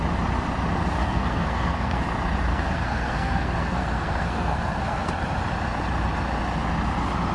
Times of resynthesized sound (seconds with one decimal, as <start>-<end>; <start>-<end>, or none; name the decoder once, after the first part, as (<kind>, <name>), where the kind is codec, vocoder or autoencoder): 1.0-2.0 (codec, SNAC); 2.5-5.1